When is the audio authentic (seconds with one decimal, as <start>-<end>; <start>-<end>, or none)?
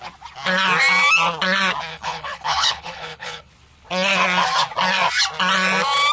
0.0-1.9; 3.5-6.1